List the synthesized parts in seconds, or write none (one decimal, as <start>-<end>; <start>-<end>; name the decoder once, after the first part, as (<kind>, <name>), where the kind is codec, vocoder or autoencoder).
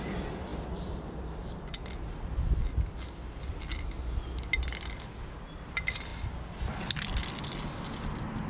none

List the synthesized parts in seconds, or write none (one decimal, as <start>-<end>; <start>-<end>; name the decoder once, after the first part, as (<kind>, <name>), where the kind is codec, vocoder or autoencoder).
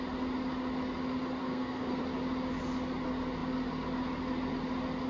1.4-2.0 (codec, SNAC)